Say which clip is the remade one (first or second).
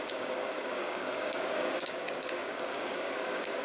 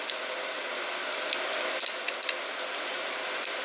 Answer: first